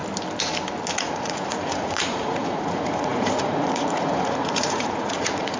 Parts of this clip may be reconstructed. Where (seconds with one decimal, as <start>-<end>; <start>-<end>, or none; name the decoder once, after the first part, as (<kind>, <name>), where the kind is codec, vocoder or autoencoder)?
0.9-5.6 (vocoder, Vocos)